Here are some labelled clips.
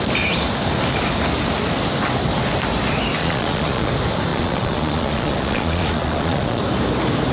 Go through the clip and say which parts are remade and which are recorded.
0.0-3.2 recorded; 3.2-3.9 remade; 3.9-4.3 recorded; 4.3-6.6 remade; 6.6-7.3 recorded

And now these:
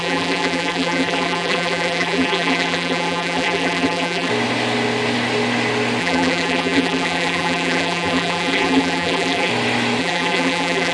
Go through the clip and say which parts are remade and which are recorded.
0.0-4.3 remade; 4.3-6.0 recorded; 6.0-9.5 remade; 9.5-10.0 recorded; 10.0-10.9 remade

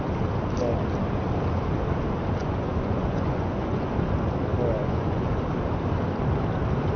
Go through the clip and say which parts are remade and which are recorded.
0.0-2.4 recorded; 2.4-3.9 remade; 3.9-4.8 recorded; 4.8-5.4 remade; 5.4-7.0 recorded